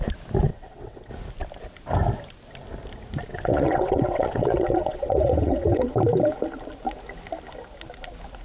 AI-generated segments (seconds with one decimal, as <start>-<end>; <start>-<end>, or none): 0.5-1.1; 3.3-5.9